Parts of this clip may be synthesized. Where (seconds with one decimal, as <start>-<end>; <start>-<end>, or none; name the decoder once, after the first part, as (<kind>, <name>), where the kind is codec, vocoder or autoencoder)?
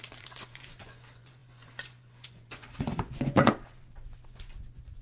0.0-5.0 (vocoder, Vocos)